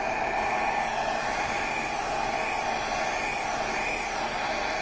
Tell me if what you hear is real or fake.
real